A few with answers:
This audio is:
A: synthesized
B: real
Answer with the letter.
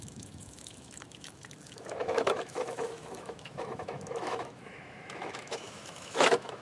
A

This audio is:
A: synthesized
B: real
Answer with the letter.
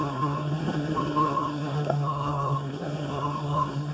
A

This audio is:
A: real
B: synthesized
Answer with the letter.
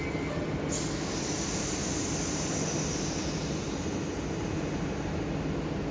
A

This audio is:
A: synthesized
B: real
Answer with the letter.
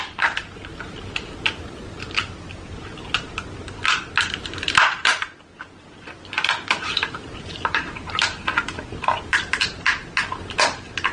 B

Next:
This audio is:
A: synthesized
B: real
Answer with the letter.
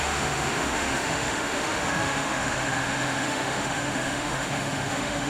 A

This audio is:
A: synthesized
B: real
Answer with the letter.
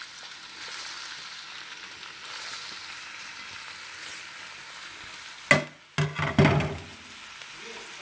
B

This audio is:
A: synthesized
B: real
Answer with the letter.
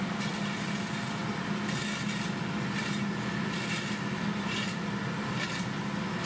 B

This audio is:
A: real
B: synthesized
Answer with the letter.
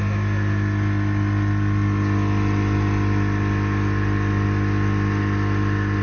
A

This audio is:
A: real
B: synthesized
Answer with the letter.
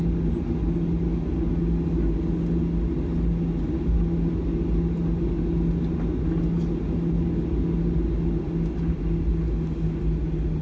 A